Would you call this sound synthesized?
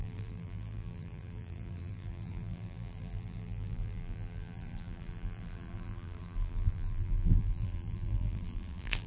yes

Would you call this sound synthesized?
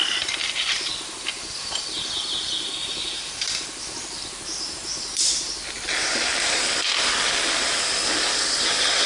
yes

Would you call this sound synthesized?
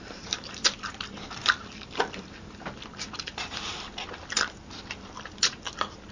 yes